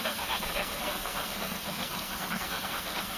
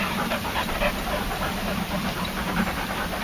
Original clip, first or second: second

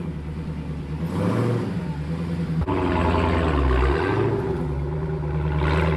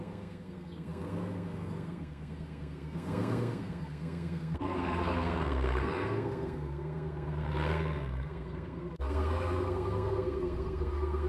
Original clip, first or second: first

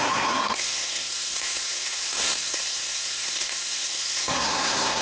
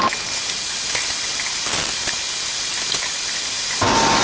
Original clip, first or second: second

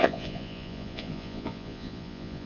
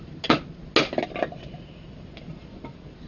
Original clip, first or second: second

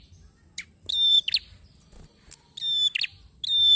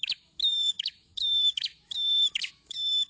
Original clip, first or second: first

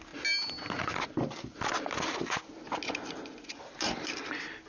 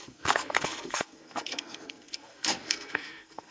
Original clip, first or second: first